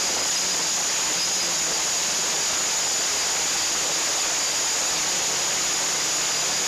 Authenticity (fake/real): real